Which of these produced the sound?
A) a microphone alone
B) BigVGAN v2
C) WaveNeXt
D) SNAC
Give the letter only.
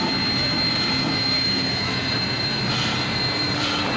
A